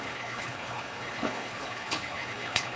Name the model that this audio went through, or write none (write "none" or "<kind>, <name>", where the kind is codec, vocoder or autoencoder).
codec, HILCodec